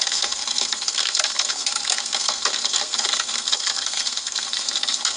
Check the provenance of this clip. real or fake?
fake